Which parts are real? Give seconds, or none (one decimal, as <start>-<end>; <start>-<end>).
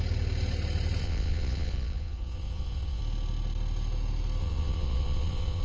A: 0.0-1.0; 3.0-4.4